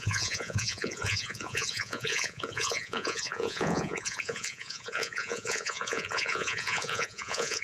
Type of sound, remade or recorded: remade